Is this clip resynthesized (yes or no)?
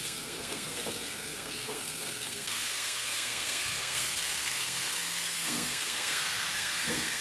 yes